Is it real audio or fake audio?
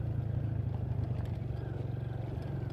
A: real